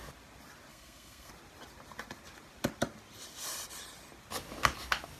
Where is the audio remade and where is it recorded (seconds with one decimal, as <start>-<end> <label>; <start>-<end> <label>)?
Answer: 0.0-0.7 recorded; 0.7-1.3 remade; 1.3-5.2 recorded